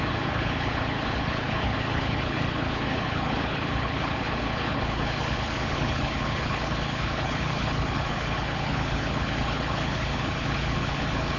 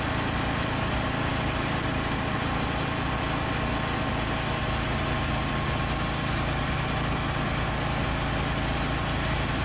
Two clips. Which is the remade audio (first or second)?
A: first